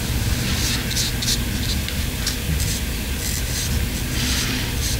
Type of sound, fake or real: real